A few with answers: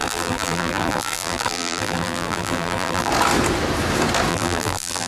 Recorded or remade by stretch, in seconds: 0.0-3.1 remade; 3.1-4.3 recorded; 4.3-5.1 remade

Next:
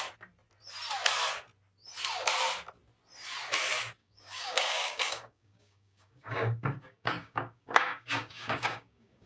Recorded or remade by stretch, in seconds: 0.0-4.0 recorded; 4.0-9.3 remade

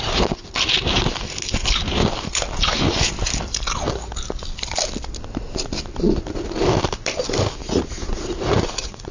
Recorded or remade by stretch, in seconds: 0.0-7.6 recorded; 7.6-9.1 remade

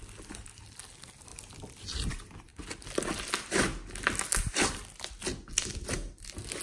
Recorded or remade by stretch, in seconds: 0.0-6.6 recorded

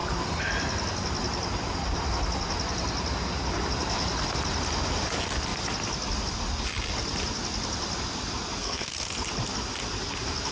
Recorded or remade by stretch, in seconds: 0.0-8.6 recorded; 8.6-9.1 remade; 9.1-10.5 recorded

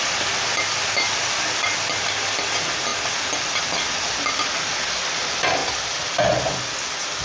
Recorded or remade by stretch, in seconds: 0.0-7.2 recorded

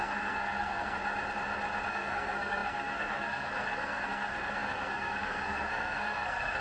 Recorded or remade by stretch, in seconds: 0.0-1.0 remade; 1.0-1.9 recorded; 1.9-6.6 remade